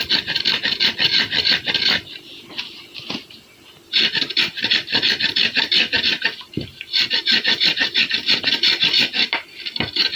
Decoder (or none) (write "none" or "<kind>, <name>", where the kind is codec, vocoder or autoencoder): vocoder, BigVGAN v2